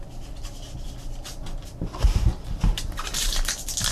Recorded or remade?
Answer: recorded